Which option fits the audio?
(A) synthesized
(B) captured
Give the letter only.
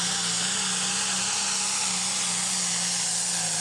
B